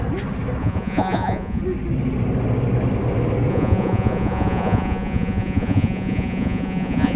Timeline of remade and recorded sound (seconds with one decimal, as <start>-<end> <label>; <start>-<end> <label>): 0.0-0.6 recorded; 0.6-1.6 remade; 1.6-3.5 recorded; 3.5-7.2 remade